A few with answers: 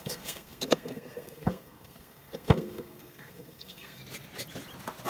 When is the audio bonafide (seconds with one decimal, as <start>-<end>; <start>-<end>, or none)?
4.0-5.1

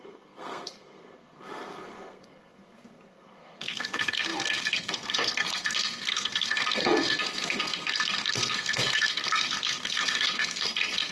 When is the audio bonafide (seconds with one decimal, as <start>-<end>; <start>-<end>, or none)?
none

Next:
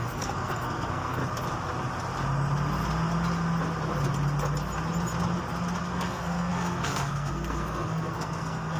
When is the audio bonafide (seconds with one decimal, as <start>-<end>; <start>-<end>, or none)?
1.2-5.8

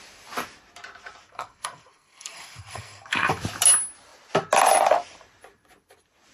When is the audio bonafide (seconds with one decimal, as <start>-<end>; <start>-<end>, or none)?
0.0-1.3; 3.4-6.3

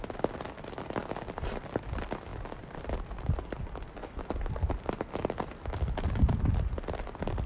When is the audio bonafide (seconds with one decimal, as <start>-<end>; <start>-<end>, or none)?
0.0-7.5

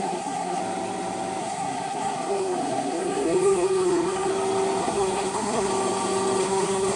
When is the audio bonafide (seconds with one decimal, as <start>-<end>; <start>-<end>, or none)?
0.6-1.4; 4.3-4.8; 5.7-6.4